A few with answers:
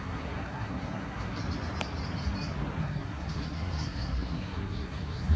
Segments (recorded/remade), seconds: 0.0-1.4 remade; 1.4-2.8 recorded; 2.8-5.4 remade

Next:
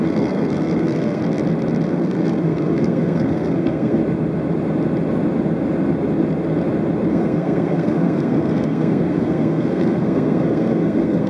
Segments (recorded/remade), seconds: 0.0-1.2 remade; 1.2-1.9 recorded; 1.9-4.0 remade; 4.0-7.1 recorded; 7.1-11.3 remade